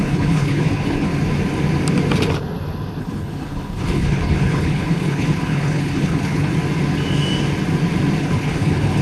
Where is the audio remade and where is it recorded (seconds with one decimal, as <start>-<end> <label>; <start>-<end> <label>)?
0.0-1.1 remade; 1.1-3.0 recorded; 3.0-6.5 remade; 6.5-8.2 recorded; 8.2-9.0 remade